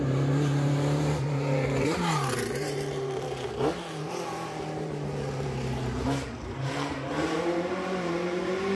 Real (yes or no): no